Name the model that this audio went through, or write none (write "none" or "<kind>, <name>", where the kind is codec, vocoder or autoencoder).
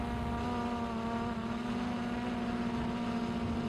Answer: none